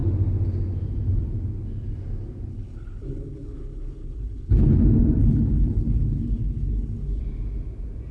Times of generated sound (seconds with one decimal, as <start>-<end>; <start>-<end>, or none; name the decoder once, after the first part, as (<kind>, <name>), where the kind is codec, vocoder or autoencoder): 2.5-4.8 (codec, HILCodec); 5.2-7.2